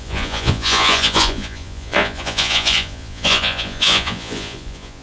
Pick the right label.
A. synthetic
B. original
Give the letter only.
A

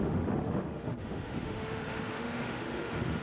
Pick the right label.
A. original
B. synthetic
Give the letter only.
B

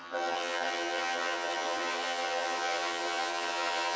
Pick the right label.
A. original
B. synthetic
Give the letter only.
B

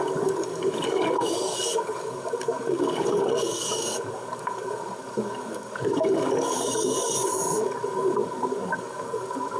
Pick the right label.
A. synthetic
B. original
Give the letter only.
A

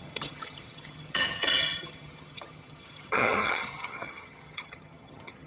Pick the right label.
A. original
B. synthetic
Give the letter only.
B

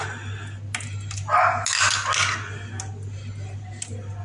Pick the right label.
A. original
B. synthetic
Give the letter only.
A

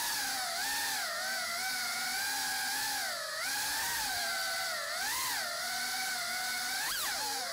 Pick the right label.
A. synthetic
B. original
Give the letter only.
B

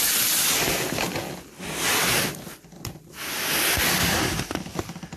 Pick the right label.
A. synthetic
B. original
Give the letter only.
B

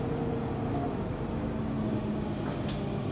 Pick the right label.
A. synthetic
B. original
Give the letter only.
B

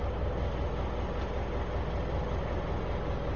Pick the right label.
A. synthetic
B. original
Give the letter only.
B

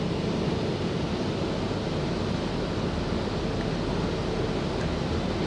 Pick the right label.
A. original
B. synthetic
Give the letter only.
A